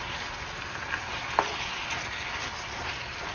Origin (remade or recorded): recorded